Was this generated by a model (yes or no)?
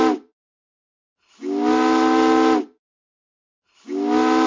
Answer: no